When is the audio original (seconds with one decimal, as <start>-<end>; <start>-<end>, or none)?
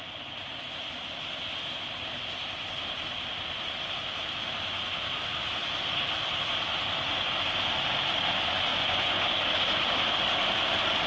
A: 0.0-8.7; 9.2-11.1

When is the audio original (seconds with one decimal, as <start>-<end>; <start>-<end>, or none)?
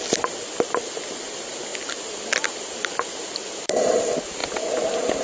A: 0.0-5.2